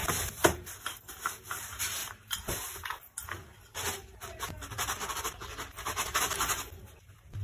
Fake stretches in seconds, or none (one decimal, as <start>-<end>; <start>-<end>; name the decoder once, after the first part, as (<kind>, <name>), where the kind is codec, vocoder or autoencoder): none